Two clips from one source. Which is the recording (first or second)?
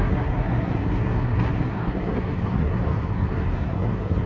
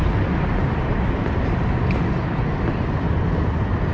second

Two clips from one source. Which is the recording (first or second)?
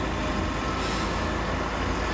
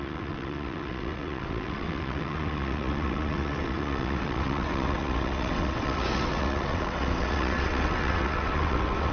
first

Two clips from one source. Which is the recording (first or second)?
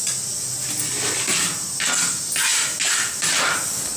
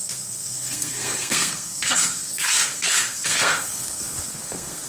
first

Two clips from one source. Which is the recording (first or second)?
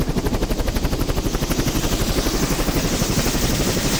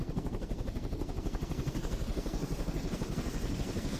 first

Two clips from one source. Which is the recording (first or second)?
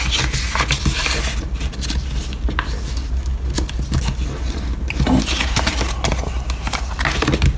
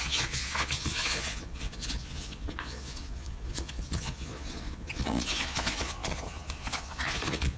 first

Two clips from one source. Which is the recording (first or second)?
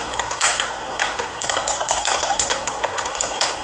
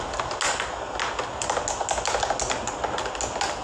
second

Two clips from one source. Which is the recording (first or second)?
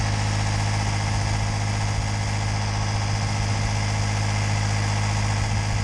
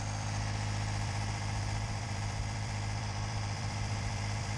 first